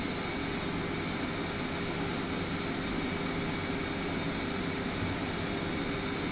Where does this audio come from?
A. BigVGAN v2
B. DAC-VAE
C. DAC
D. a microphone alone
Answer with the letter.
D